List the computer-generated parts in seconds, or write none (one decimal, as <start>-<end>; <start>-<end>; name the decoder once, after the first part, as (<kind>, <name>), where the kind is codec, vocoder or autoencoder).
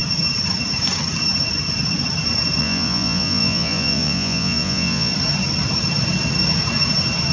2.6-5.1 (vocoder, Vocos)